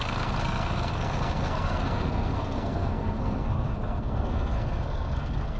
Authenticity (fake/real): fake